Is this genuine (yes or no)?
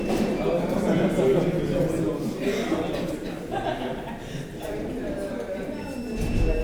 no